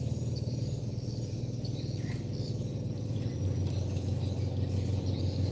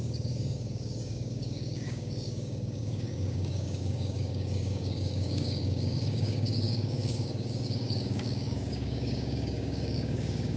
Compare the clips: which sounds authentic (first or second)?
first